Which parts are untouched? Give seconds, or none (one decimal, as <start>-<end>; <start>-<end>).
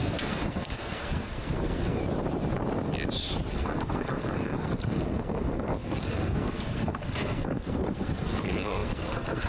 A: 2.0-3.5